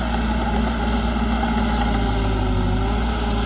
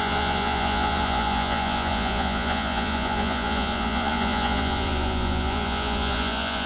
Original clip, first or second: first